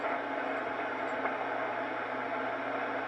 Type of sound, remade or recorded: recorded